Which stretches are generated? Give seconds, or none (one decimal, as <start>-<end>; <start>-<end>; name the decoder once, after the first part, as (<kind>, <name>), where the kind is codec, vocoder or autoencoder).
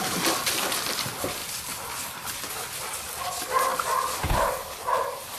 3.7-4.5 (vocoder, BigVGAN v2)